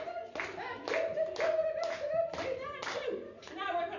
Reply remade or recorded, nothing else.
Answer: recorded